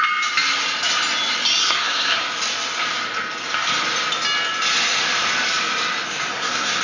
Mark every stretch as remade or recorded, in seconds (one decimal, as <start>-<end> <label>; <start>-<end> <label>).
0.0-1.6 recorded; 1.6-2.2 remade; 2.2-6.3 recorded; 6.3-6.8 remade